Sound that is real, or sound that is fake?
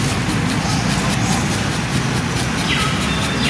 real